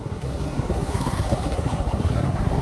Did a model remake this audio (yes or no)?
yes